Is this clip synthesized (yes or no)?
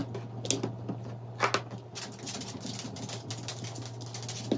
no